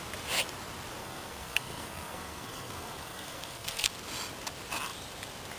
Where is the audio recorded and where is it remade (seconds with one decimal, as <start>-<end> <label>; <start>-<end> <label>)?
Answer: 0.0-1.0 recorded; 1.0-3.9 remade; 3.9-5.6 recorded